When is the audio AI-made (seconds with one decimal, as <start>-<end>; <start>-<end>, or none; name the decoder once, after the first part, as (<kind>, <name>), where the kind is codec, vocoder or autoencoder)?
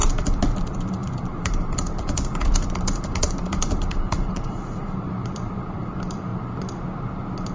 0.6-6.3 (vocoder, BigVGAN v2)